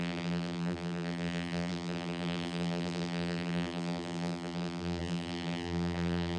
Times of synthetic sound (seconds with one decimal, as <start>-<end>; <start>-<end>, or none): 0.0-6.4